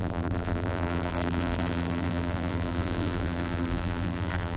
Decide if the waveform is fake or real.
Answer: fake